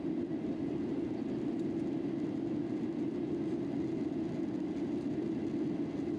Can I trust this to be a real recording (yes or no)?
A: yes